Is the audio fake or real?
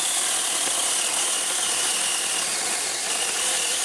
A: real